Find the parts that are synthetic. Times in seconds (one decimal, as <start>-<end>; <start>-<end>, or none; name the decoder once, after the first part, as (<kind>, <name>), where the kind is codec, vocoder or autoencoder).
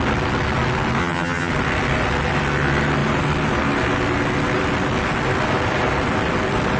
1.0-1.5 (vocoder, HiFi-GAN)